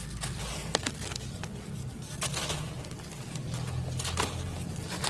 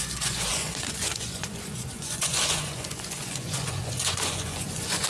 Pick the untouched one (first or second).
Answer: first